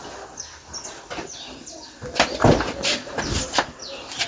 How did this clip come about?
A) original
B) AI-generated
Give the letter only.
A